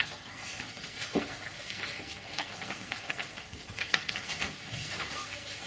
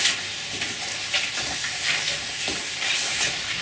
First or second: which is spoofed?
first